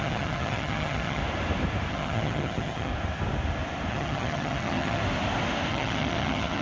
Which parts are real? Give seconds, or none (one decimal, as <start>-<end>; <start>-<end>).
1.2-1.9; 2.9-3.9; 5.0-5.7

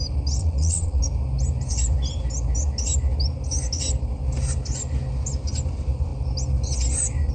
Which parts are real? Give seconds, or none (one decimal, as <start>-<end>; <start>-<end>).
0.0-0.4; 1.0-7.3

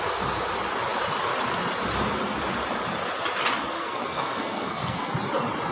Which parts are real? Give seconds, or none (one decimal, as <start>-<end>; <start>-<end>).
0.0-3.7; 5.1-5.7